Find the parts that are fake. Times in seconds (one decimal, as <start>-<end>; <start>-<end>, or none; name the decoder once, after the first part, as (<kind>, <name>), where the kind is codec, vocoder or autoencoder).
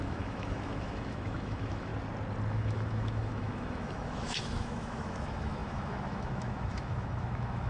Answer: 0.0-1.9 (autoencoder, DAC-VAE); 2.5-7.7